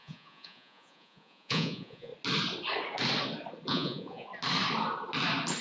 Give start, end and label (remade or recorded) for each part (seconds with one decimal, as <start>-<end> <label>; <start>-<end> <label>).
0.0-2.1 remade; 2.1-3.7 recorded; 3.7-4.3 remade; 4.3-5.6 recorded